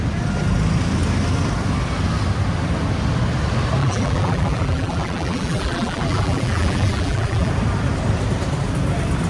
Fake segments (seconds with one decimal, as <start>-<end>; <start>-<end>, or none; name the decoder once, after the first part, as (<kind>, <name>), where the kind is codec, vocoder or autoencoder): 3.8-7.5 (vocoder, BigVGAN v2)